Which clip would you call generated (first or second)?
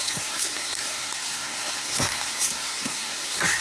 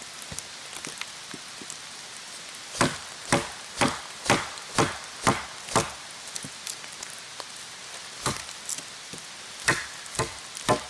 first